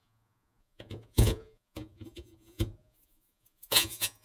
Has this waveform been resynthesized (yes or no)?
yes